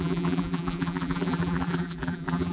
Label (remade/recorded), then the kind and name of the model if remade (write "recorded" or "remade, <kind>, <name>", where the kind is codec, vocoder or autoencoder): remade, vocoder, BigVGAN v2